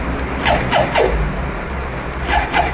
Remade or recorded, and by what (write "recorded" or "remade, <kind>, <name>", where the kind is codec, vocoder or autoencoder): recorded